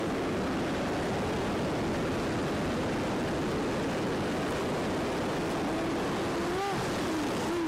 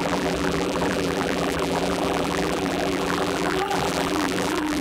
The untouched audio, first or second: first